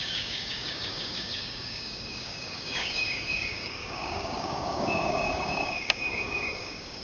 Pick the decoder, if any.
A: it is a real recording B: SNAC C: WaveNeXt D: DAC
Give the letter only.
D